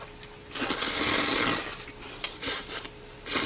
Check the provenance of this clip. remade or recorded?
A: recorded